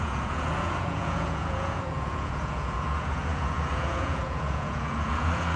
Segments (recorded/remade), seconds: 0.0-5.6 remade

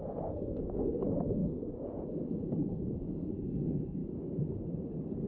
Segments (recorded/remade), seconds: 0.0-1.4 recorded; 1.4-3.4 remade; 3.4-4.0 recorded; 4.0-4.6 remade; 4.6-5.3 recorded

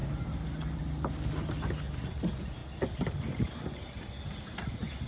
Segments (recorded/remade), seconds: 0.0-5.1 recorded

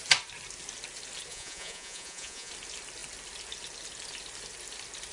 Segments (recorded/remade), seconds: 0.0-1.3 recorded; 1.3-2.5 remade; 2.5-5.1 recorded

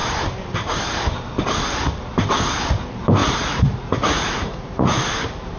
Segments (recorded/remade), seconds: 0.0-3.2 recorded; 3.2-5.1 remade; 5.1-5.6 recorded